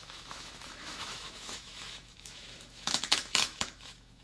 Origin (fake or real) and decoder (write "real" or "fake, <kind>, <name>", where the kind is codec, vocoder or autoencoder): fake, autoencoder, DAC-VAE